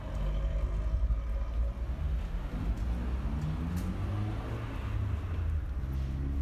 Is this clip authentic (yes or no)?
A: yes